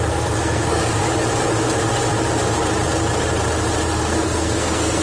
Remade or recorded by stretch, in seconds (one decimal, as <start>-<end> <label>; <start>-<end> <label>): 0.0-1.0 remade; 1.0-4.0 recorded; 4.0-5.0 remade

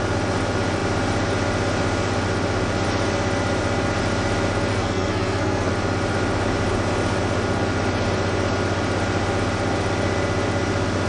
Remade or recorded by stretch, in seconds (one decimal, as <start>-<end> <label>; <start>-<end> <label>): 0.0-4.7 recorded; 4.7-5.7 remade; 5.7-11.1 recorded